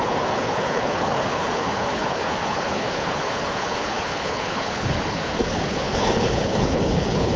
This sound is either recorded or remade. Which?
remade